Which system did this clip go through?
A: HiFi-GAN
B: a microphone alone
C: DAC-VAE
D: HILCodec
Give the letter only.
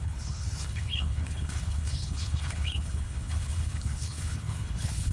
D